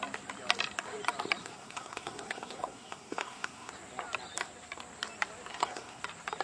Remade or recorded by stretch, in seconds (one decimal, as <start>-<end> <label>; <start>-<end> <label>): 0.0-1.4 recorded; 1.4-3.7 remade; 3.7-5.5 recorded; 5.5-6.0 remade; 6.0-6.4 recorded